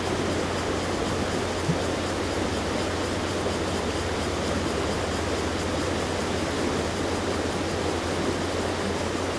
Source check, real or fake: real